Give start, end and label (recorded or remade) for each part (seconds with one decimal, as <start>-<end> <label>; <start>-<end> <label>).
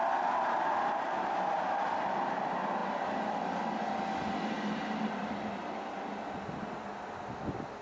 0.0-2.8 remade; 2.8-7.8 recorded